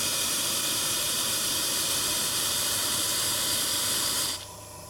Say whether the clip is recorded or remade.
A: remade